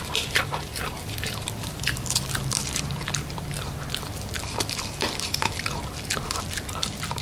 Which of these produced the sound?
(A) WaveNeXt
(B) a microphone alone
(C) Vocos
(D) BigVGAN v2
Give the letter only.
D